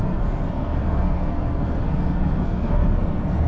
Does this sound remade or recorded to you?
remade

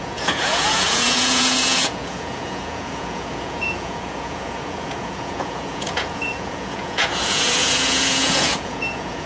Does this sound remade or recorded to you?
remade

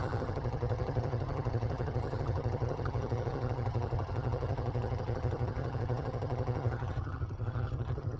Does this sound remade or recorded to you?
remade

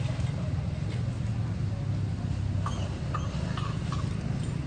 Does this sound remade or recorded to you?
recorded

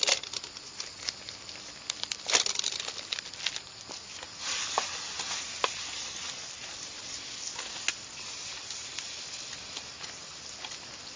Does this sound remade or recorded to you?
recorded